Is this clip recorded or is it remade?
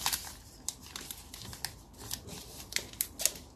recorded